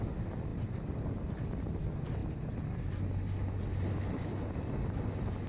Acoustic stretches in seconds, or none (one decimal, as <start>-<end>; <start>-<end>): 0.0-5.5